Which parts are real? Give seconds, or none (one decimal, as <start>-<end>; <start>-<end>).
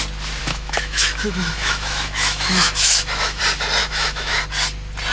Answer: 0.0-0.4; 3.4-3.8; 4.4-5.1